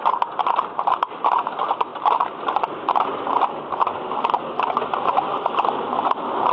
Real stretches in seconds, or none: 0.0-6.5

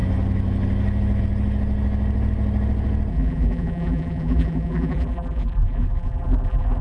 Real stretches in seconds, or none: 0.0-3.1

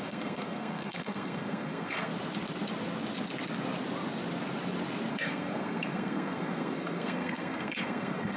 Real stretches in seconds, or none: 2.1-5.1

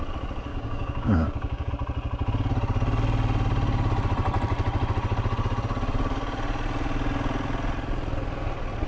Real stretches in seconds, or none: 0.0-0.5; 1.7-8.9

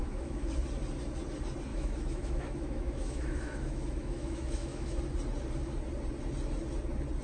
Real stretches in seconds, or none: 0.5-1.7; 5.0-7.2

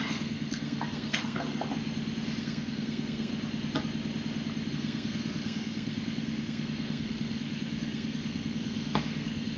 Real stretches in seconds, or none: 1.7-2.4; 3.3-4.7